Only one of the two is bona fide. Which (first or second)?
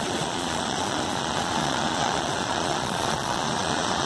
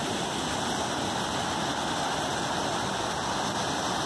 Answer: second